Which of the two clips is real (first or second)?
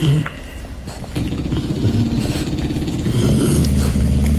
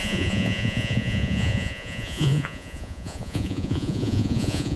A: first